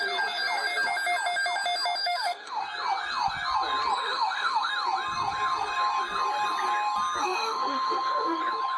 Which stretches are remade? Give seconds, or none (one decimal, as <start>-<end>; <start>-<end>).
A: 2.0-2.6; 3.9-4.7; 7.2-8.4